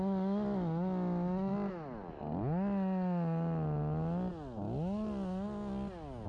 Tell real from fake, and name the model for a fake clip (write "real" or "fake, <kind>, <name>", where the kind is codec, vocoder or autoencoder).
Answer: real